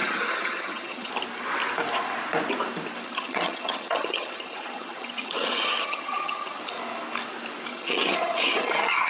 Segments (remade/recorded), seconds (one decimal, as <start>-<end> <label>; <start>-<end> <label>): 0.0-1.1 remade; 1.1-3.0 recorded; 3.0-6.6 remade; 6.6-7.7 recorded; 7.7-9.1 remade